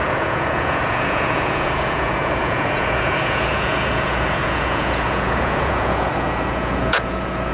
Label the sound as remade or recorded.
remade